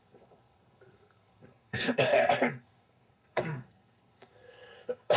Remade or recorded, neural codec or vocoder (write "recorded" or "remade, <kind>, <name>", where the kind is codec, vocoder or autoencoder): remade, codec, SNAC